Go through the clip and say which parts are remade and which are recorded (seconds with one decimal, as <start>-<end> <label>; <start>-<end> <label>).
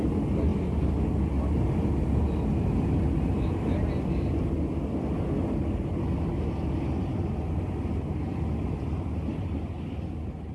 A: 0.0-10.5 recorded